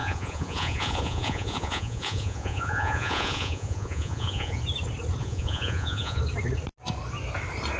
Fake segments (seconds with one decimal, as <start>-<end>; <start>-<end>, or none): 0.0-4.6; 5.2-6.2